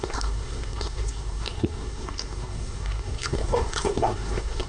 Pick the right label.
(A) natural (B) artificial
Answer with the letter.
B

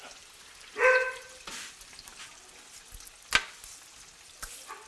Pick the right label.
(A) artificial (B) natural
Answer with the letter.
B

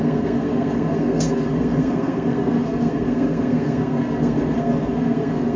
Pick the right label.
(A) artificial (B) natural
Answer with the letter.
A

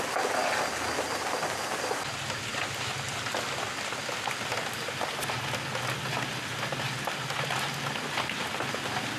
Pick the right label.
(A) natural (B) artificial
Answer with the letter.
A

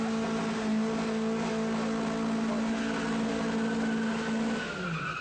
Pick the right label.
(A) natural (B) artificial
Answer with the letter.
A